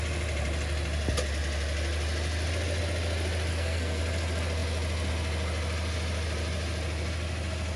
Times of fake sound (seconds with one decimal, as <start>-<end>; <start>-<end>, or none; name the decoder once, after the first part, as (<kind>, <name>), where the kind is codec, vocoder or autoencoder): 3.5-4.0 (codec, SNAC)